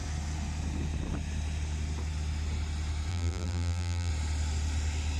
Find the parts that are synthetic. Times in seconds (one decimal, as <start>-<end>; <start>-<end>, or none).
3.1-4.1